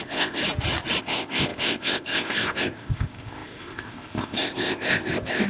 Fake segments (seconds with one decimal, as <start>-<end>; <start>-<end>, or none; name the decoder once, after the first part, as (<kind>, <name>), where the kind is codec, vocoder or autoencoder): 0.0-0.4 (codec, ZipCodec); 1.0-5.5